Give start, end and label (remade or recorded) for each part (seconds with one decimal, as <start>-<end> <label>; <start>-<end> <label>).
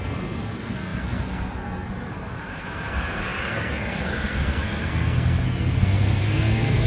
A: 0.0-6.9 remade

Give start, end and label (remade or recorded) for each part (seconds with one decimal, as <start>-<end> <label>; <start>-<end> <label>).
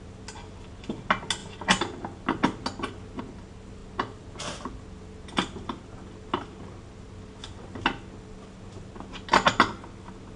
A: 0.0-10.4 recorded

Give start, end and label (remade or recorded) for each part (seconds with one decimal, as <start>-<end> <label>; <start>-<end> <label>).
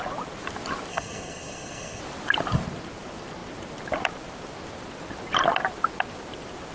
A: 0.0-0.9 recorded; 0.9-2.0 remade; 2.0-6.7 recorded